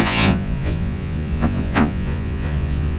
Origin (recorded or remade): remade